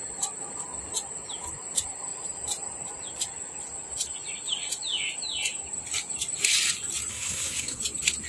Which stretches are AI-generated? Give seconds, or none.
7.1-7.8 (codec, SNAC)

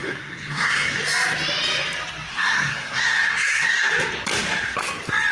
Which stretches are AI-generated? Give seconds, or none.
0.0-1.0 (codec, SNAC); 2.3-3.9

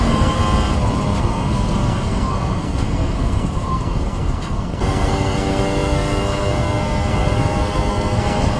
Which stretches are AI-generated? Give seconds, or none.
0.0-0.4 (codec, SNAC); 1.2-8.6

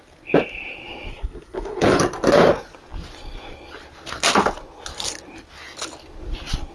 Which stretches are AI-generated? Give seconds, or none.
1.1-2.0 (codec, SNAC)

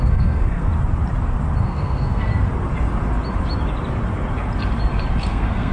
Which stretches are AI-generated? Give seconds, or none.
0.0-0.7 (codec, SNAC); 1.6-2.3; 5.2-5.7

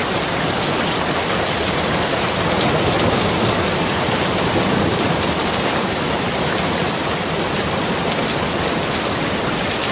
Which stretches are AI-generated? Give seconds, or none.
none

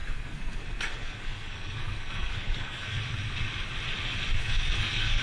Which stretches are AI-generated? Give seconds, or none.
0.0-3.0 (codec, SNAC); 4.4-5.2

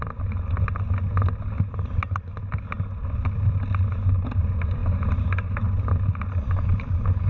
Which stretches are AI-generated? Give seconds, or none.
none